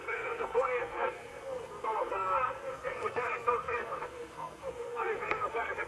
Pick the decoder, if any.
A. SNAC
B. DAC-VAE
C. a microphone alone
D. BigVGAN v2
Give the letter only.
A